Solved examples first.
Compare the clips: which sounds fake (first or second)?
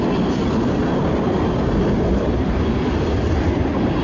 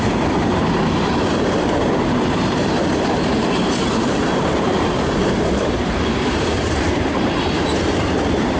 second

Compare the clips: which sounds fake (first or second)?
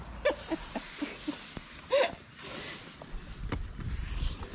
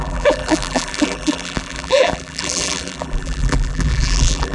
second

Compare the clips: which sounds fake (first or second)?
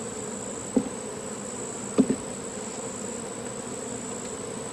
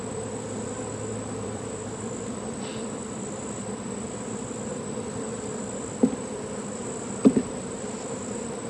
second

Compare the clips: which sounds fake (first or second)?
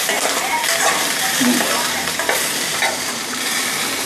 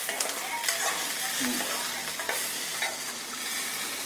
first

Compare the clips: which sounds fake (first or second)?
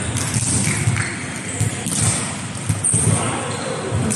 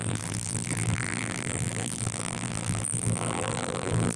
second